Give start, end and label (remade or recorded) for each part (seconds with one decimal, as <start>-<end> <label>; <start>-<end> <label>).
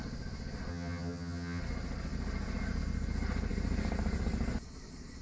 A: 0.0-0.7 recorded; 0.7-1.6 remade; 1.6-5.2 recorded